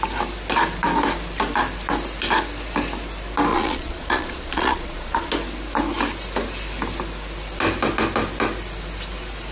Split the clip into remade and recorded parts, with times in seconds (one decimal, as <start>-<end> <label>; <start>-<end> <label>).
0.0-3.5 recorded; 3.5-5.3 remade; 5.3-9.5 recorded

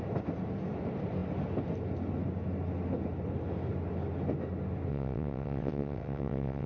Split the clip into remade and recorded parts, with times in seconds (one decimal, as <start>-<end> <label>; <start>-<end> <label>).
0.0-4.9 recorded; 4.9-6.7 remade

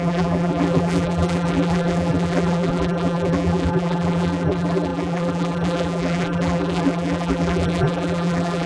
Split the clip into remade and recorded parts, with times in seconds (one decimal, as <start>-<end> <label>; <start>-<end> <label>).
0.0-8.7 remade

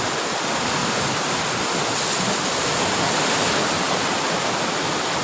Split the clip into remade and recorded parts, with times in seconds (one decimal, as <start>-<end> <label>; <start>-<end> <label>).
0.0-5.2 recorded

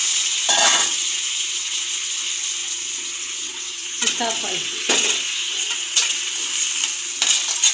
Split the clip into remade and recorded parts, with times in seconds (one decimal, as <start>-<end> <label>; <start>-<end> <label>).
0.0-2.1 remade; 2.1-2.6 recorded; 2.6-6.4 remade; 6.4-7.7 recorded

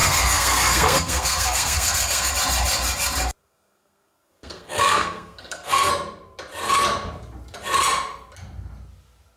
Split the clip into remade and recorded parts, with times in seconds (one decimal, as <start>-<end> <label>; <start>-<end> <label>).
0.0-2.3 remade; 2.3-3.4 recorded; 3.4-5.9 remade; 5.9-9.4 recorded